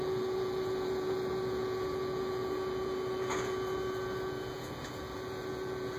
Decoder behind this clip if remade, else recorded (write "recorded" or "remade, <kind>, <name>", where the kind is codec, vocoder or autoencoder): remade, vocoder, Vocos